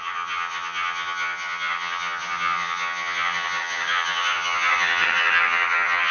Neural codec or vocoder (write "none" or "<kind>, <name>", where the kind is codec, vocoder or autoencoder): vocoder, HiFi-GAN